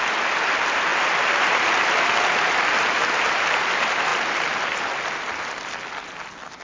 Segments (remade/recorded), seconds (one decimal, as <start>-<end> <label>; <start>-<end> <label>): 0.0-6.6 recorded